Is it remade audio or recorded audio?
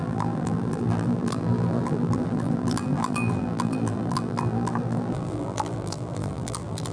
remade